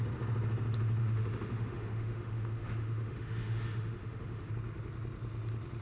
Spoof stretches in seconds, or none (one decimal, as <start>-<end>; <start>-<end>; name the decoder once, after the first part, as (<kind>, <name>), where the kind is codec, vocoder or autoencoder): 1.0-4.5 (autoencoder, DAC-VAE)